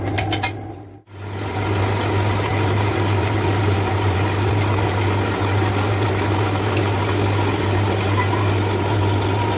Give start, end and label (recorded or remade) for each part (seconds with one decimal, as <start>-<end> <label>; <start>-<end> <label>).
0.0-2.5 recorded; 2.5-4.5 remade; 4.5-9.6 recorded